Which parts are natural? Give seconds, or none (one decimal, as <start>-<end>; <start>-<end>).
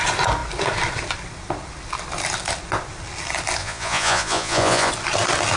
0.0-3.6; 4.9-5.6